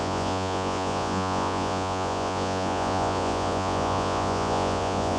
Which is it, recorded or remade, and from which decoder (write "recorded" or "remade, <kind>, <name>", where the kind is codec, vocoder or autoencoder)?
remade, vocoder, Vocos